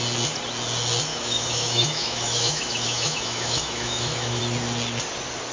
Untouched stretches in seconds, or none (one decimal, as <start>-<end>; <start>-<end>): 0.0-1.1; 4.4-5.5